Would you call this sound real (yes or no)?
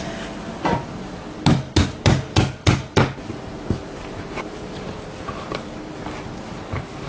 yes